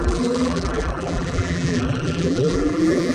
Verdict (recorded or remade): remade